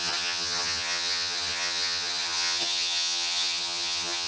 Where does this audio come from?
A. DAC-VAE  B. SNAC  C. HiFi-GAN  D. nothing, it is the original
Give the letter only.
C